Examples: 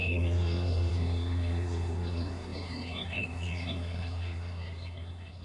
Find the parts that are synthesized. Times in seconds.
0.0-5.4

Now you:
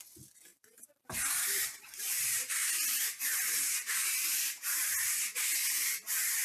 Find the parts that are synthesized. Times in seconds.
0.5-2.0; 2.6-5.1